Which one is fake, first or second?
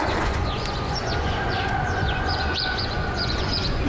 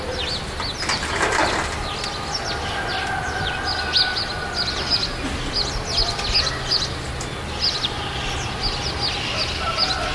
first